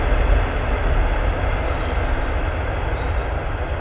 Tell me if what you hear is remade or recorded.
recorded